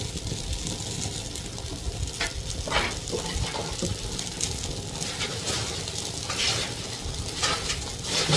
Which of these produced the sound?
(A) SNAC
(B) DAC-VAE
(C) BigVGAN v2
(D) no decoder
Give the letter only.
D